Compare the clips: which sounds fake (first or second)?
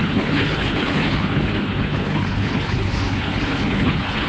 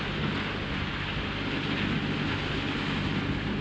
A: first